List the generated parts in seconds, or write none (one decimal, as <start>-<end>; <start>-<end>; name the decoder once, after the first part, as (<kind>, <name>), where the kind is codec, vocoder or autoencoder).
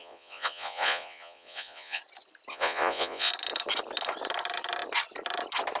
0.0-2.0 (vocoder, Vocos); 2.5-3.3